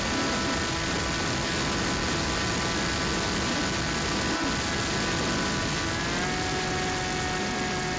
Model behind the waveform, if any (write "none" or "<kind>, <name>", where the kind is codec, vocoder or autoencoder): none